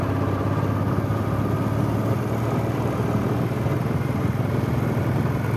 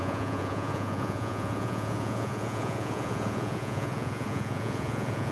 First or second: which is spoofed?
second